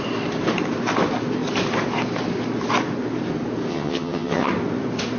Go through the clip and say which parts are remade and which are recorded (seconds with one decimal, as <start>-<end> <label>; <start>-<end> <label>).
0.0-3.7 recorded; 3.7-4.5 remade; 4.5-5.2 recorded